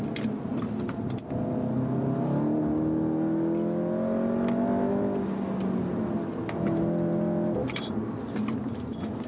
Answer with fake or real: real